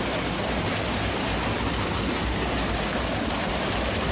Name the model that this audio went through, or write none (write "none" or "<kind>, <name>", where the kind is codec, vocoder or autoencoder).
none